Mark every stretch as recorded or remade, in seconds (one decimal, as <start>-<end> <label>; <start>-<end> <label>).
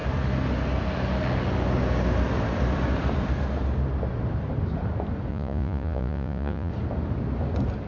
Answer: 0.0-5.3 recorded; 5.3-6.7 remade; 6.7-7.9 recorded